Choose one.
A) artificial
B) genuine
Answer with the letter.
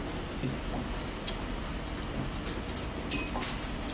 B